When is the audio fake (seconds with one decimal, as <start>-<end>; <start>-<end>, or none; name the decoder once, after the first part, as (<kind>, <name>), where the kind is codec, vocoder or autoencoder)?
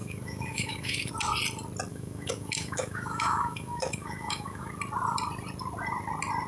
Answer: 0.0-1.1 (autoencoder, DAC-VAE); 1.9-4.7